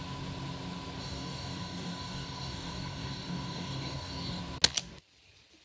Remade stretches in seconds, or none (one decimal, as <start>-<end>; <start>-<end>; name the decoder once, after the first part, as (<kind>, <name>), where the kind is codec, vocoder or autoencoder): 1.0-4.4 (codec, DAC)